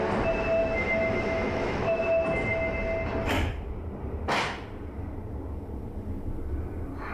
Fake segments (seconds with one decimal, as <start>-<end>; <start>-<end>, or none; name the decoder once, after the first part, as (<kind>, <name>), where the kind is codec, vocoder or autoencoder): 0.6-2.0 (autoencoder, DAC-VAE)